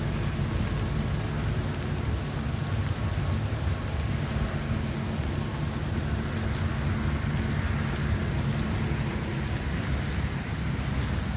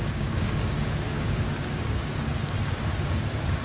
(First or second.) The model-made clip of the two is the second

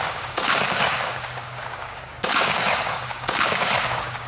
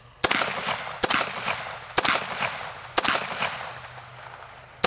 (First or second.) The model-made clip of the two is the first